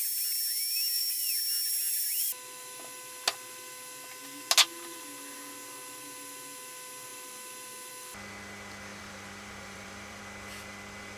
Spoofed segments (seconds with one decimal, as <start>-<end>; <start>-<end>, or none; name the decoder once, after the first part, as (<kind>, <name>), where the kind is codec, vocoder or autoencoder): 8.9-10.2 (vocoder, BigVGAN v2)